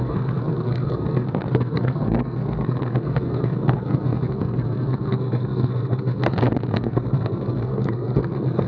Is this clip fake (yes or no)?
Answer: yes